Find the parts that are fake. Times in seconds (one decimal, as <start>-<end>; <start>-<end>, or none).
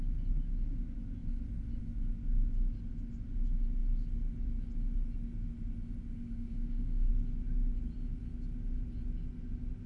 6.1-7.1